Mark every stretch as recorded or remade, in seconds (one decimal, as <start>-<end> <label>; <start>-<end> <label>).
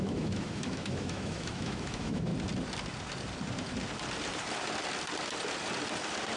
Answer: 0.0-2.3 remade; 2.3-6.4 recorded